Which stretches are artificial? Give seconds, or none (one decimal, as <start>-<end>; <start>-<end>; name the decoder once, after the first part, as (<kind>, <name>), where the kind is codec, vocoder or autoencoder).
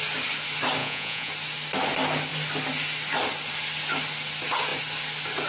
0.8-1.3 (vocoder, Vocos)